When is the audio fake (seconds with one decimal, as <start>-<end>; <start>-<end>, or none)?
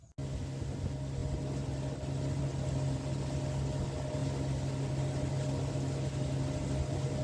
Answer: none